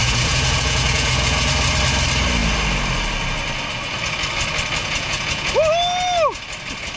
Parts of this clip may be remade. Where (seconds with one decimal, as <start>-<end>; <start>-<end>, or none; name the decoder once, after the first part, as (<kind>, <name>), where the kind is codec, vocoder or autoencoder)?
0.0-1.5 (vocoder, Vocos); 4.8-5.5